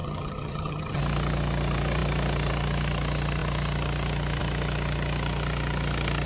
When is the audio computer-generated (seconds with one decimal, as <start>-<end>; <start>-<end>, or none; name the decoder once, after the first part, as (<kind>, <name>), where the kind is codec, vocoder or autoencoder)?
0.0-1.0 (vocoder, HiFi-GAN)